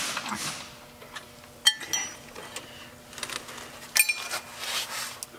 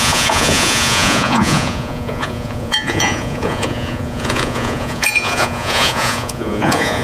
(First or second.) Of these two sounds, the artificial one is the second